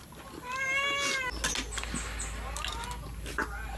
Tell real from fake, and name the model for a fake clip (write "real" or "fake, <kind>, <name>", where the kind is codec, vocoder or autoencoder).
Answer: real